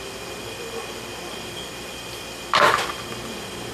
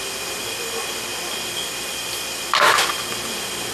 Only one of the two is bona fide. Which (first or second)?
second